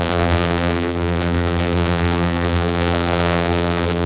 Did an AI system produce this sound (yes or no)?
yes